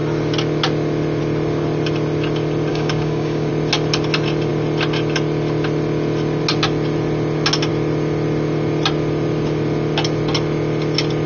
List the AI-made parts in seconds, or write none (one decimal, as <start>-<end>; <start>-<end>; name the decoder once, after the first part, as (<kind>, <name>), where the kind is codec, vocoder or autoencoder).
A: 2.7-3.5 (codec, DAC)